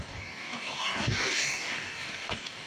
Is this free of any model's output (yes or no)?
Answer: no